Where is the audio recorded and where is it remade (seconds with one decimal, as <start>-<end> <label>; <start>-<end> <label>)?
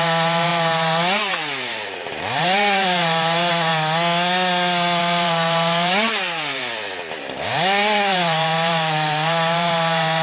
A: 0.0-3.7 remade; 3.7-5.0 recorded; 5.0-6.6 remade; 6.6-7.2 recorded; 7.2-10.2 remade